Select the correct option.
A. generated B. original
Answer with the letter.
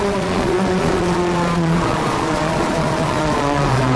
A